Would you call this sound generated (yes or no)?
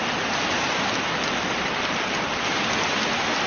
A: no